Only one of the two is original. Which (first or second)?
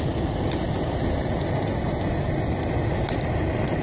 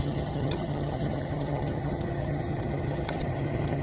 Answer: first